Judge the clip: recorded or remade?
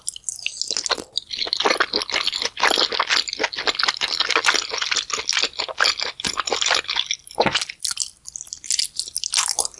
recorded